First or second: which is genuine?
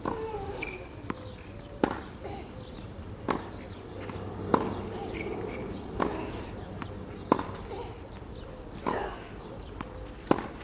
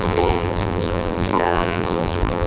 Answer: first